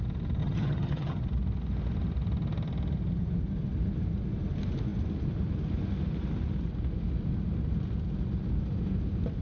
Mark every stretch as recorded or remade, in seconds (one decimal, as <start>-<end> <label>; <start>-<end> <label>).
0.0-0.4 recorded; 0.4-1.2 remade; 1.2-9.4 recorded